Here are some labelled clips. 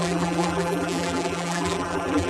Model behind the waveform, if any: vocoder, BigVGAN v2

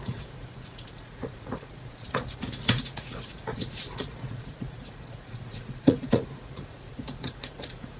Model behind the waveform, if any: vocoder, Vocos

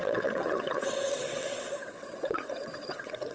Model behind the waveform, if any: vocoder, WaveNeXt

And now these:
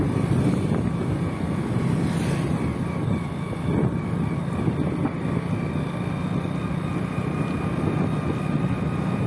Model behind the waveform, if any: none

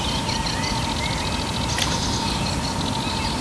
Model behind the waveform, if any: none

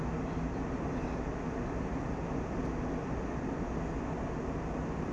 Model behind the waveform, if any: none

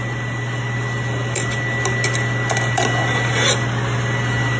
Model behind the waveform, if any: none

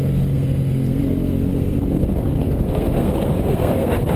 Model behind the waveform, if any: codec, SNAC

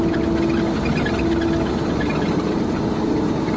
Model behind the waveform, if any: none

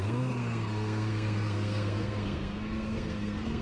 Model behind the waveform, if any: codec, SNAC